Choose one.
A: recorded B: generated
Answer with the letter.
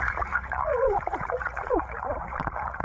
B